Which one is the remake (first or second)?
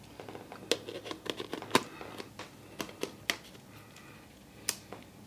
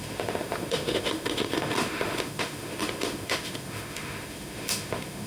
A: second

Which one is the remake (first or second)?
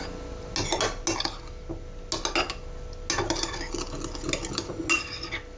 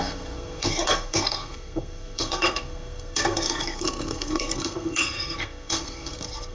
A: second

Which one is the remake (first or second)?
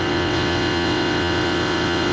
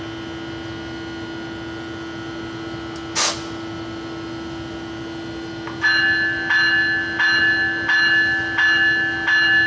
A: first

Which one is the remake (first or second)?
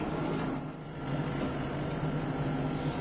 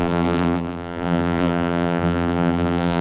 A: second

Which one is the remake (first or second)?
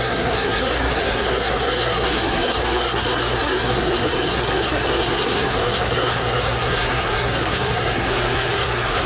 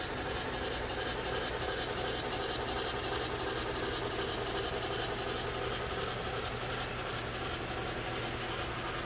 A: first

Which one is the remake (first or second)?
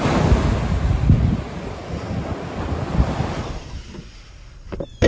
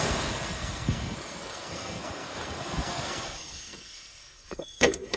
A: second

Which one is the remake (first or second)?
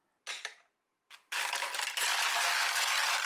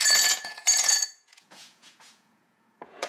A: second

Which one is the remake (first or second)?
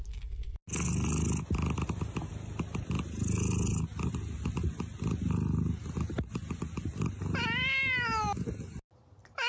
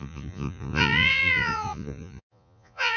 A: second